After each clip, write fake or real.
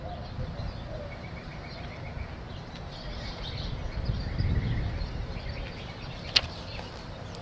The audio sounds real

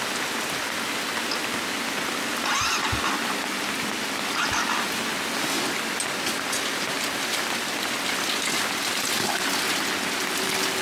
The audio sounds real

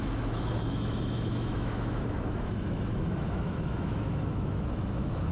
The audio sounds fake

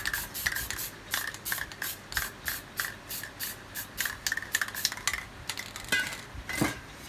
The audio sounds real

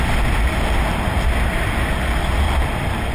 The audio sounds real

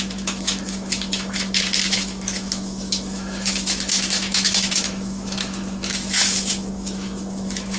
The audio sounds fake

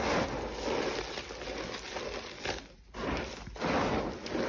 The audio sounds real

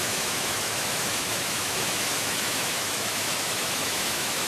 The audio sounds fake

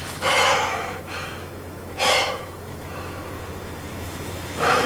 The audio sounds fake